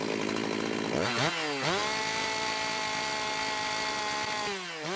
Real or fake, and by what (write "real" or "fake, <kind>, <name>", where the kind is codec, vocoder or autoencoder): real